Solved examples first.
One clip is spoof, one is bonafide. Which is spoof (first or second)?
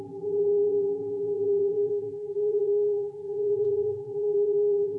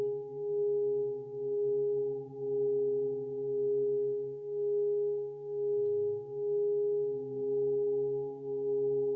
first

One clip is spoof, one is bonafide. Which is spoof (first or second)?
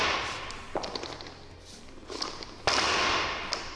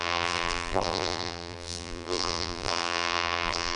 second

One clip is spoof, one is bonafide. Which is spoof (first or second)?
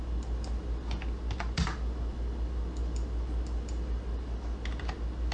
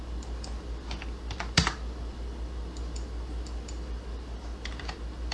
second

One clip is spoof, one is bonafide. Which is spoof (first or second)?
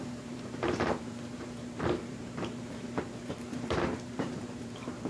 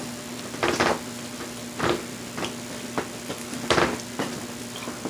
first